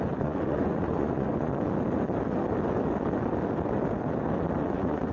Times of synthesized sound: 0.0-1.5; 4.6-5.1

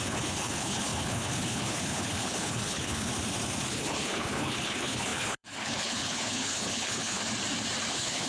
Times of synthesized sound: 0.0-3.1; 3.7-7.2; 7.9-8.3

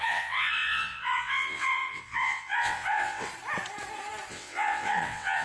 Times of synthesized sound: 0.0-3.3; 4.3-5.4

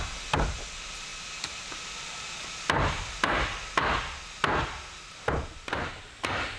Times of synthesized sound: none

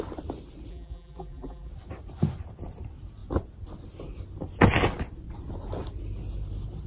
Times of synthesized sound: 0.7-1.7